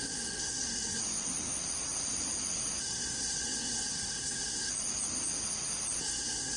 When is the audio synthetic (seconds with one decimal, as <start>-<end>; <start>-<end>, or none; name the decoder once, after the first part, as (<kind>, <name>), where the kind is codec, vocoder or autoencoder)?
0.0-1.0 (codec, SNAC); 2.8-4.7; 6.0-6.6